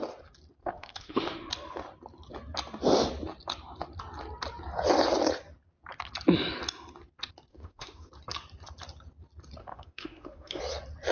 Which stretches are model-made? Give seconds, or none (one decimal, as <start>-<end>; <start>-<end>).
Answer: 0.6-1.5; 7.5-8.1; 9.6-10.6